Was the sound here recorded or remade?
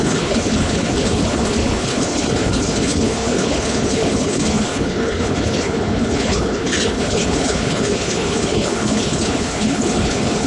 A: remade